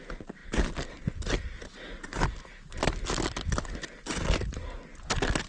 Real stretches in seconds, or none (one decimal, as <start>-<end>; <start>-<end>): 0.0-5.5